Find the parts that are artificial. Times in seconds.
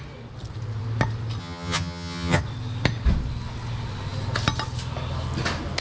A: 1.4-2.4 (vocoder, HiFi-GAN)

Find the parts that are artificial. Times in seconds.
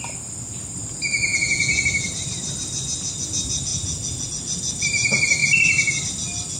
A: 1.3-1.8 (vocoder, Vocos); 3.7-4.3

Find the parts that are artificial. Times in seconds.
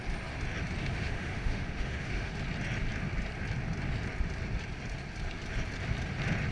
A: 0.8-2.3 (autoencoder, DAC-VAE)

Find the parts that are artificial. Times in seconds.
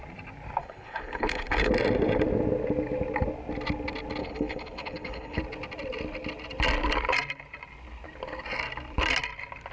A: 0.6-1.7 (codec, HILCodec); 4.2-5.4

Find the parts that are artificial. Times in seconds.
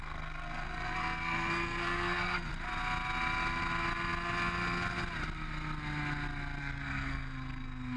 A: 0.0-2.5 (codec, SNAC); 6.6-8.0